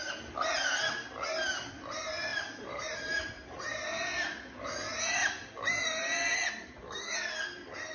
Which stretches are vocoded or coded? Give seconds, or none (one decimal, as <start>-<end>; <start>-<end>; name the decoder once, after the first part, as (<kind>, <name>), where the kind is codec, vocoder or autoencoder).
2.3-3.9 (vocoder, BigVGAN v2)